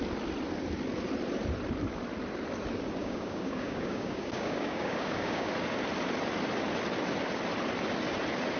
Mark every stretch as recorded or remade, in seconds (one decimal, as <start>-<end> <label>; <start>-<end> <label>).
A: 0.0-3.0 recorded; 3.0-5.5 remade; 5.5-8.6 recorded